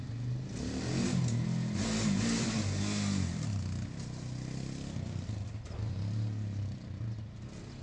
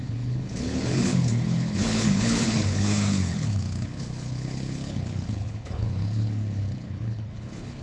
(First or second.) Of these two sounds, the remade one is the second